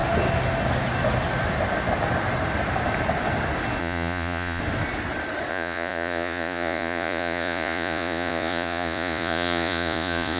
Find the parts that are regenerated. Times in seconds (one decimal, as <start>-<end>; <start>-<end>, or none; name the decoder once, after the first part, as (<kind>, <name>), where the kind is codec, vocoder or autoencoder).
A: 3.8-4.6 (vocoder, Vocos); 5.5-10.4